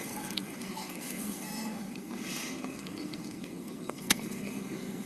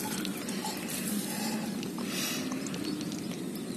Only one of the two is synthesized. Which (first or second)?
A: first